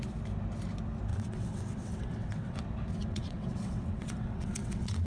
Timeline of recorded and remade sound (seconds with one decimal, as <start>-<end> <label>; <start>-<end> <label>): 0.0-1.1 recorded; 1.1-2.6 remade; 2.6-3.0 recorded; 3.0-5.1 remade